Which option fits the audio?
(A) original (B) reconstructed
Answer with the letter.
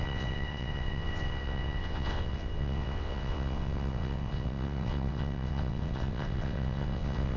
B